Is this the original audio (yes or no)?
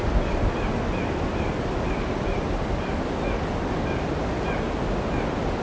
yes